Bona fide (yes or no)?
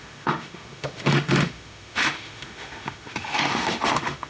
no